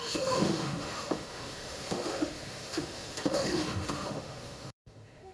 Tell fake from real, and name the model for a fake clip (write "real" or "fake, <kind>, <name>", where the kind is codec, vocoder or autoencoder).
fake, autoencoder, DAC-VAE